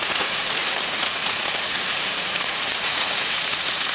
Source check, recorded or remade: remade